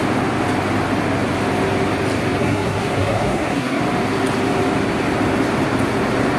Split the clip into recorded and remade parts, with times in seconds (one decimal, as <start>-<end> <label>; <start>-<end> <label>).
0.0-2.4 recorded; 2.4-3.8 remade; 3.8-6.4 recorded